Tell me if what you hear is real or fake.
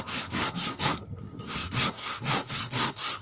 fake